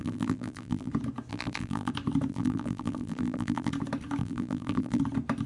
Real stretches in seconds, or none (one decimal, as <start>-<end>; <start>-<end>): 0.9-1.3; 1.9-2.3; 3.7-4.2; 5.0-5.5